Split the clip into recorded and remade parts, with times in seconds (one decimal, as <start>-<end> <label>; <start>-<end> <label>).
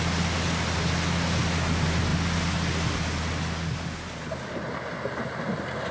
0.0-5.9 recorded